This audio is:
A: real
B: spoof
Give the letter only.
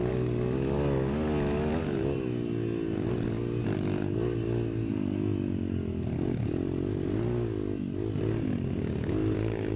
A